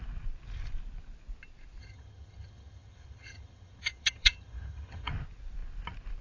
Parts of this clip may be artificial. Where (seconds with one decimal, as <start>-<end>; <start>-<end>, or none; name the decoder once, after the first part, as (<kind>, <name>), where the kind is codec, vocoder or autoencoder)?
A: 1.8-5.1 (vocoder, HiFi-GAN)